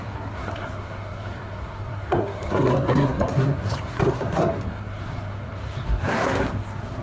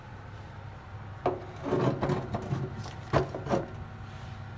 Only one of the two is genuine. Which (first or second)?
second